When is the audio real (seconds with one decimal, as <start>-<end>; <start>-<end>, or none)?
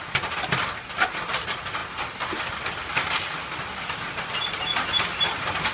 0.0-5.7